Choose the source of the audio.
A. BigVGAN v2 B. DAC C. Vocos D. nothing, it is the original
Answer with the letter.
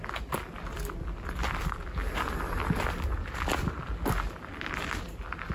D